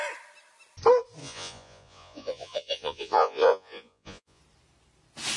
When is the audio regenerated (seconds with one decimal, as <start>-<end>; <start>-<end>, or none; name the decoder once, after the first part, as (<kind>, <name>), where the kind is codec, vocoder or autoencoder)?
1.2-4.4 (vocoder, Vocos)